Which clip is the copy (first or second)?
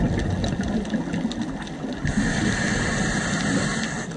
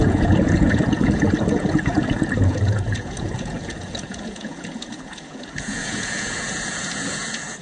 second